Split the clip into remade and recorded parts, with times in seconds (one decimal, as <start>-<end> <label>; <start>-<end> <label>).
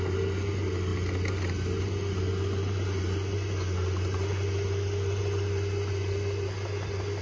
0.0-7.2 recorded